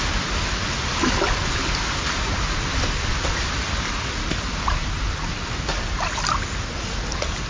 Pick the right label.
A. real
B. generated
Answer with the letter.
A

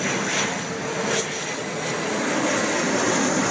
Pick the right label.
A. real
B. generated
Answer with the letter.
A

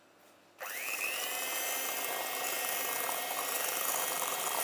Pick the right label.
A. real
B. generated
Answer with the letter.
B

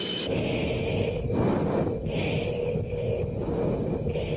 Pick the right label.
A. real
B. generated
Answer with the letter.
A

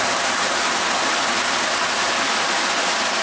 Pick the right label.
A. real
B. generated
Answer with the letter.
A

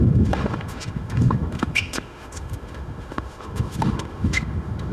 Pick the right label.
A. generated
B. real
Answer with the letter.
A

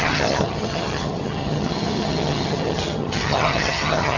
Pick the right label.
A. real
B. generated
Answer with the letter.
B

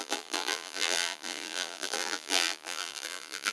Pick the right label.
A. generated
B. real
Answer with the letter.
A